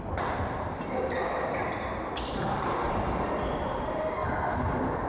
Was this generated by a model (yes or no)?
no